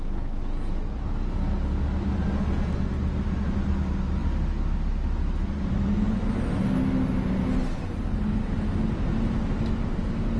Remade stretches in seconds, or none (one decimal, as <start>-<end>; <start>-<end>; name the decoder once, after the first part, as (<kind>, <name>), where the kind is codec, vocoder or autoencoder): none